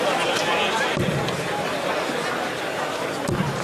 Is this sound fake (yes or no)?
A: no